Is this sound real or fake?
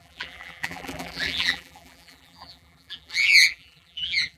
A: fake